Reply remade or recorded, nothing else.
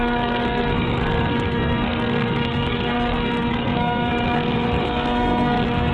remade